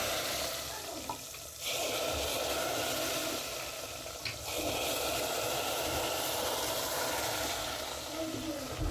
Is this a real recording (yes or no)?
yes